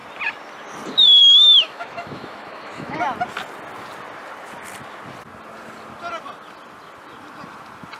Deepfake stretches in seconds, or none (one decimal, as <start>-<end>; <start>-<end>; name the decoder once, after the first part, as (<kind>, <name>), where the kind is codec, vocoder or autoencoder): 1.2-3.0 (autoencoder, DAC-VAE)